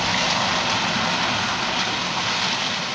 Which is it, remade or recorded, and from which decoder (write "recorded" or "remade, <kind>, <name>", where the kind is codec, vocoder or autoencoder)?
recorded